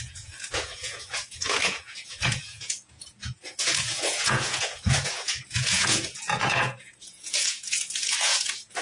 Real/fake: fake